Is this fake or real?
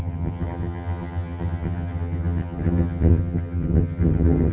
fake